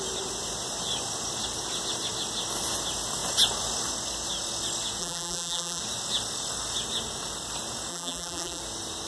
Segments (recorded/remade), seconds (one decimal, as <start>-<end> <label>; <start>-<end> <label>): 0.0-5.0 recorded; 5.0-5.8 remade; 5.8-7.9 recorded; 7.9-8.6 remade; 8.6-9.1 recorded